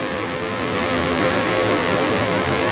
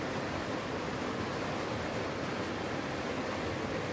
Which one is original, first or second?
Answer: second